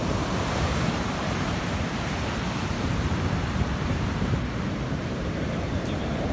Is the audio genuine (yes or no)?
no